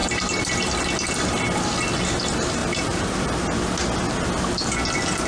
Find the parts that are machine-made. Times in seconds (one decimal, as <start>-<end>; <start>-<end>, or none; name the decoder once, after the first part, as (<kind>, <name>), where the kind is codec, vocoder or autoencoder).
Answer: 0.0-0.7 (vocoder, BigVGAN v2); 2.6-3.2